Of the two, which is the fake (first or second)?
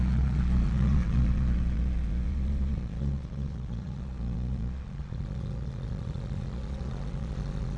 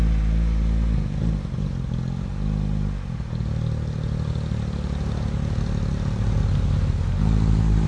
first